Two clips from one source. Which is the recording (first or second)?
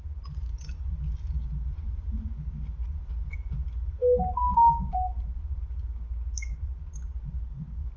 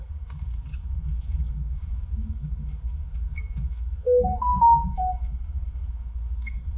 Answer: first